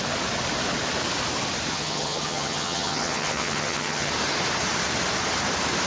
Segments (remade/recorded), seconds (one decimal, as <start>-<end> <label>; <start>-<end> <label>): 0.0-1.7 recorded; 1.7-4.1 remade; 4.1-5.9 recorded